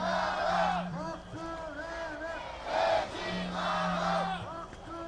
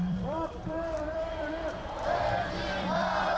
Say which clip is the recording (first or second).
first